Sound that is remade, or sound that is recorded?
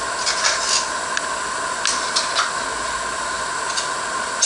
recorded